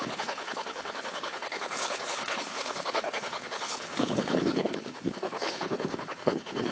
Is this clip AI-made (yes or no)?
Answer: yes